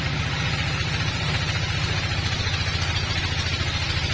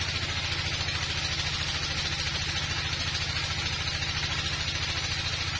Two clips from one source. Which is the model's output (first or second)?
first